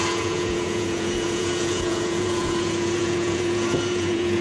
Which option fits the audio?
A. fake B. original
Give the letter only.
A